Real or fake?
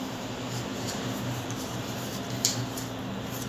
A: fake